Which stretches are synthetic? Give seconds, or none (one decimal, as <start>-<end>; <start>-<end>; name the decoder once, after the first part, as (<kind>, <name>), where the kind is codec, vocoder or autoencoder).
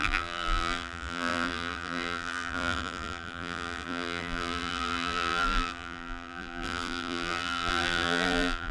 0.0-8.7 (vocoder, BigVGAN v2)